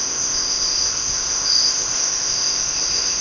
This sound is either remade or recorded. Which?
remade